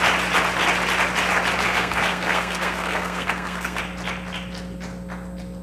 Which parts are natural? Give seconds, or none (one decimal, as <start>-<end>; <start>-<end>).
0.0-1.6; 3.8-5.6